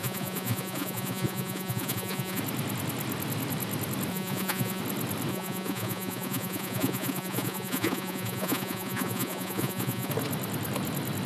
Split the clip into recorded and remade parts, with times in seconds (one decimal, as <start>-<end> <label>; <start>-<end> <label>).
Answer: 0.0-2.4 remade; 2.4-4.1 recorded; 4.1-4.8 remade; 4.8-5.3 recorded; 5.3-10.1 remade; 10.1-11.3 recorded